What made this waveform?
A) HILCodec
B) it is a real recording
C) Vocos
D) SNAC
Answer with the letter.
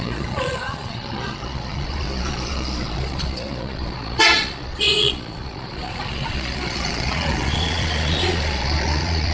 C